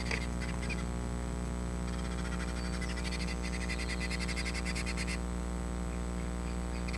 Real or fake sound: real